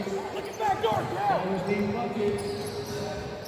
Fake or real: real